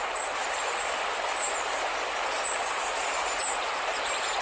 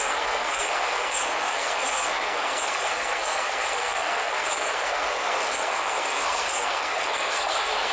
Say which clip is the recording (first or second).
first